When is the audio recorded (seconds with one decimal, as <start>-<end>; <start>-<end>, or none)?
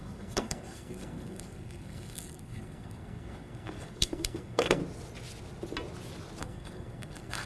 4.8-6.4